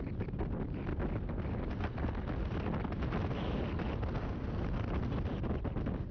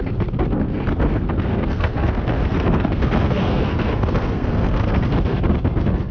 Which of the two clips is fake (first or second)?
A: second